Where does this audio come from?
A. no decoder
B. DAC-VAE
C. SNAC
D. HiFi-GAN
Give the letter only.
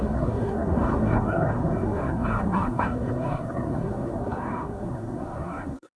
C